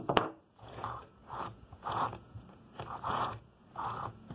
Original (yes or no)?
no